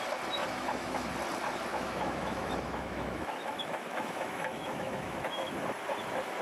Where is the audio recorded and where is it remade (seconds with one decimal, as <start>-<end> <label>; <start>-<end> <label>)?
0.0-0.4 recorded; 0.4-1.1 remade; 1.1-1.7 recorded; 1.7-5.5 remade; 5.5-6.4 recorded